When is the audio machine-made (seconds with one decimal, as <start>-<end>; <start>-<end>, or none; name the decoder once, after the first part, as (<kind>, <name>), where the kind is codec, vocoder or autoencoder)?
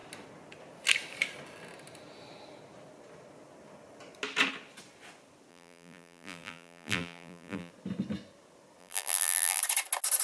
5.5-7.7 (vocoder, BigVGAN v2); 8.8-9.6